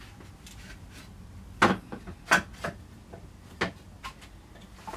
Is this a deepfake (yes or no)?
no